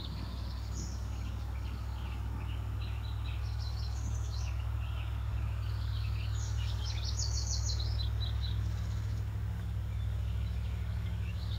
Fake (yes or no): yes